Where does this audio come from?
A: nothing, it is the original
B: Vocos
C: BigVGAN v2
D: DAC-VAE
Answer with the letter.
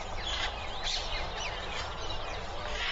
A